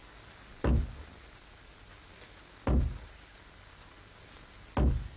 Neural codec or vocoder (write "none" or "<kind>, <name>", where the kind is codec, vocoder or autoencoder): none